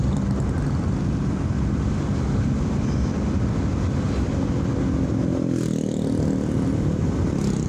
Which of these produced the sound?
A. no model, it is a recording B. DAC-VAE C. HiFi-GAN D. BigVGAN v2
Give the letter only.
A